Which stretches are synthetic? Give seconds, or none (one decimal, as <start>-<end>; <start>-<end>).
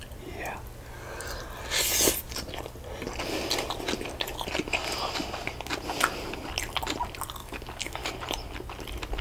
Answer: 7.4-8.1